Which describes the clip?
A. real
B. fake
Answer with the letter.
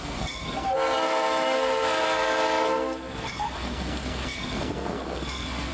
B